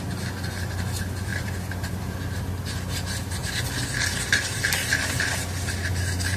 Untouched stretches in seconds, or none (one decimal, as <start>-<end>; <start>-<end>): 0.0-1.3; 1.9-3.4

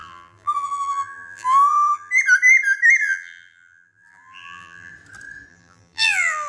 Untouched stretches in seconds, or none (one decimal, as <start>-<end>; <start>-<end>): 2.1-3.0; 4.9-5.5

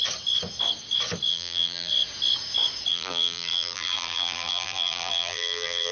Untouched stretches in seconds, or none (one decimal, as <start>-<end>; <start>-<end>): 0.0-1.3; 1.9-2.9

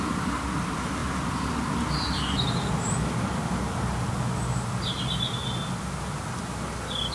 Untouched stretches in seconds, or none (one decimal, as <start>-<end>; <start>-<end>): 0.0-7.1

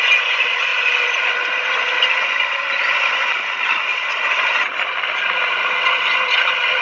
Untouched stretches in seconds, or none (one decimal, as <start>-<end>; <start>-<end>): 0.0-0.7; 1.5-6.8